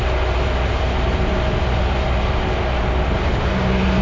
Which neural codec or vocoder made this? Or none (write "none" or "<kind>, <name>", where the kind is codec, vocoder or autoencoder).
none